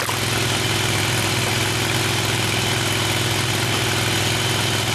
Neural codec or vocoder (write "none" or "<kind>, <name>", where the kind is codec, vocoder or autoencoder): none